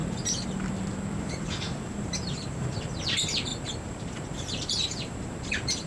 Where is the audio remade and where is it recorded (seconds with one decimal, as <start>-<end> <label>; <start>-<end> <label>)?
0.0-3.0 remade; 3.0-3.5 recorded; 3.5-5.9 remade